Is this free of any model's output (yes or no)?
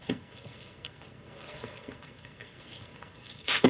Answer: no